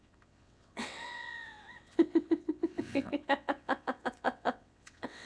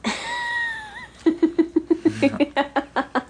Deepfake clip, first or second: first